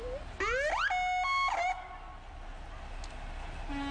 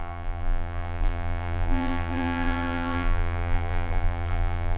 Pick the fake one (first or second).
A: second